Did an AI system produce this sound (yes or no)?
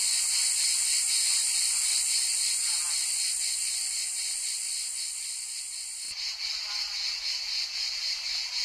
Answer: no